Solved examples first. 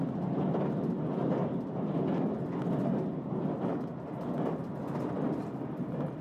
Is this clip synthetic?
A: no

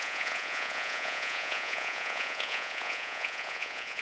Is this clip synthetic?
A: yes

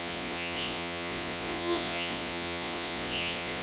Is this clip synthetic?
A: yes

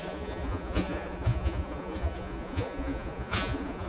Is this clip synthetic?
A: yes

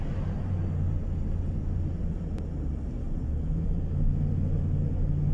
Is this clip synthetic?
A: no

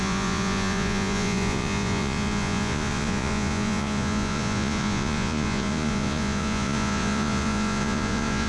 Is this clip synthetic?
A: yes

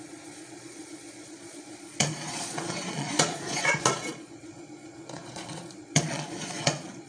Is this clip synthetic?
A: yes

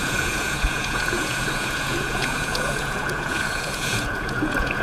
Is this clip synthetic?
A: yes